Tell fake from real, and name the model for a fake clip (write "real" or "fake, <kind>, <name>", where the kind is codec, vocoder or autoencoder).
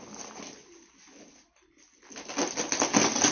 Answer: real